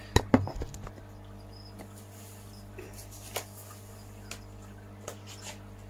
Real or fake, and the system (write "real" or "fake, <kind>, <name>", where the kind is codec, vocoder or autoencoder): real